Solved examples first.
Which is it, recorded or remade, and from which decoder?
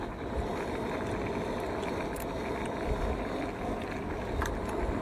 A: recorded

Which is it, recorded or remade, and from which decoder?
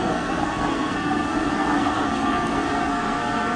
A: remade, codec, SNAC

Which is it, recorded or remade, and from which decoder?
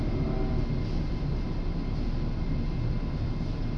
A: recorded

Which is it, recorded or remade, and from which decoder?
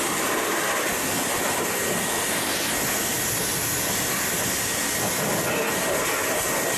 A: recorded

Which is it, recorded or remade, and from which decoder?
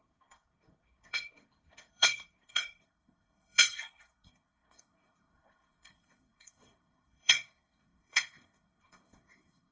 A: remade, codec, SNAC